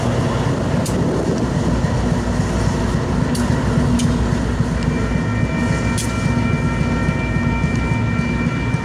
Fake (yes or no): no